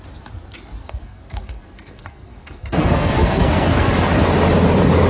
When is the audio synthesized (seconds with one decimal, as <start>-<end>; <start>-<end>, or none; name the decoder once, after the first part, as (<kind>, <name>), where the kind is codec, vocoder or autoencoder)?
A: 0.8-3.9 (codec, SNAC)

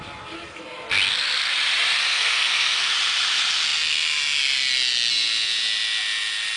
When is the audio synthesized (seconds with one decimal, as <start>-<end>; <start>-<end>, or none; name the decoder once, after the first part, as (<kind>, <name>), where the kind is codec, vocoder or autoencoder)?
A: 2.1-2.9 (codec, SNAC)

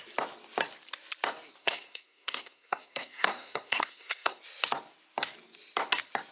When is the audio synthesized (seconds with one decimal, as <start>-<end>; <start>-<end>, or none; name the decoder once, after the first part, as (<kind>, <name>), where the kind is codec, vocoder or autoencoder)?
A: 1.6-4.4 (codec, SNAC)

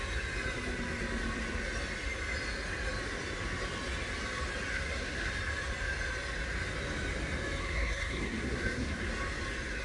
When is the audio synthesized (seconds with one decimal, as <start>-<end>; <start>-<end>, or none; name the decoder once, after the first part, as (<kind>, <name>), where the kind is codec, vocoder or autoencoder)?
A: 4.7-5.3 (codec, SNAC); 7.6-9.1

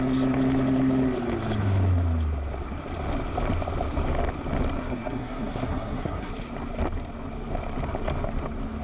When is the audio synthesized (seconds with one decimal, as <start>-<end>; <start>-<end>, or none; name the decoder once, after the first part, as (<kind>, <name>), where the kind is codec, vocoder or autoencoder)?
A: 4.8-6.3 (codec, SNAC)